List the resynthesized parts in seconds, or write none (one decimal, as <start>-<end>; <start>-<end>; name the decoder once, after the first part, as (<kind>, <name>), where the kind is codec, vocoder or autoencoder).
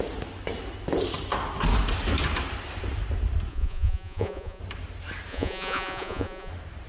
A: 3.5-4.6 (vocoder, Vocos); 5.3-6.5